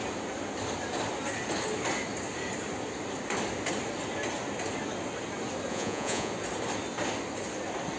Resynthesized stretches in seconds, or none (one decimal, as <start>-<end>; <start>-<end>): 5.7-6.3